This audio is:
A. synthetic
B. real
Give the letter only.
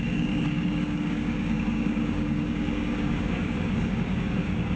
A